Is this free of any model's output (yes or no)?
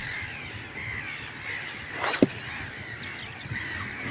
yes